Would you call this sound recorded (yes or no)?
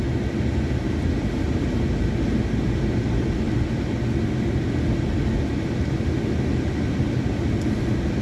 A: yes